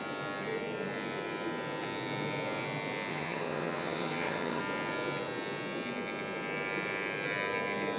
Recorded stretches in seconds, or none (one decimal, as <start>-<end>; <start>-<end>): 0.0-3.1; 4.6-8.0